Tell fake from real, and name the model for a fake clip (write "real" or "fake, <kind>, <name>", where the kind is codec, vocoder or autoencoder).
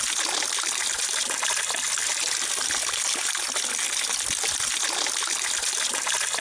real